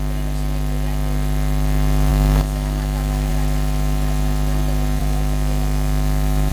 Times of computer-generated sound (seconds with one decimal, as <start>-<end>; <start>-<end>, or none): 2.1-3.3; 5.0-6.5